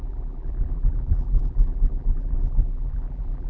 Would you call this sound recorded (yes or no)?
no